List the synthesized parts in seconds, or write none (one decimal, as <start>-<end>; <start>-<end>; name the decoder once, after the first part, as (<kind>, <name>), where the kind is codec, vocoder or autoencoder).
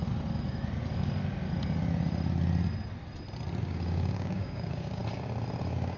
3.6-5.0 (codec, DAC); 5.6-6.0